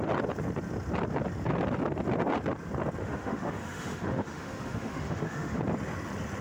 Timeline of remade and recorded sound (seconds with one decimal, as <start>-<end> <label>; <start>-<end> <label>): 0.0-3.0 recorded; 3.0-5.6 remade; 5.6-6.4 recorded

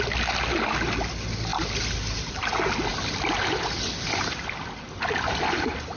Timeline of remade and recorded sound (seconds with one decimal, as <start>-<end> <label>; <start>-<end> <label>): 0.0-6.0 recorded

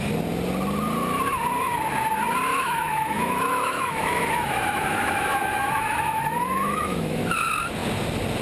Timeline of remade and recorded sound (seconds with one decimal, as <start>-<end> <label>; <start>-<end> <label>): 0.0-2.5 recorded; 2.5-7.2 remade; 7.2-8.4 recorded

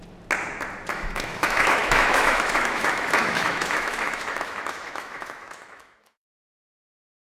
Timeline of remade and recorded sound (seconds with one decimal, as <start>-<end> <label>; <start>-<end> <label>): 0.0-0.9 recorded; 0.9-7.3 remade

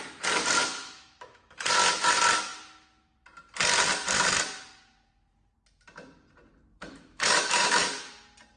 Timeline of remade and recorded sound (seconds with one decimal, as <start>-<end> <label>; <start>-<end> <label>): 0.0-0.6 recorded; 0.6-1.5 remade; 1.5-6.7 recorded; 6.7-7.8 remade; 7.8-8.6 recorded

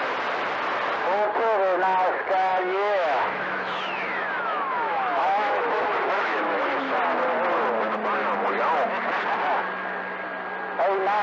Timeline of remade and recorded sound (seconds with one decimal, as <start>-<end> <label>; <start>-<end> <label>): 0.0-2.5 recorded; 2.5-6.7 remade; 6.7-11.2 recorded